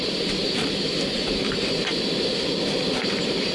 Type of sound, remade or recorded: remade